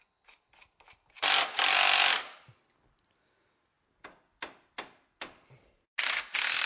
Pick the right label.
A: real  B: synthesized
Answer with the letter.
A